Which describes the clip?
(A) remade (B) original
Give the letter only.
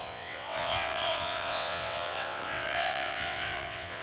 A